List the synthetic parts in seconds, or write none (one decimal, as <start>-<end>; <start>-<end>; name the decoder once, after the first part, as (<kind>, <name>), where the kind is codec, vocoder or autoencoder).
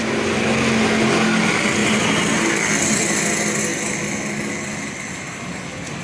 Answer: none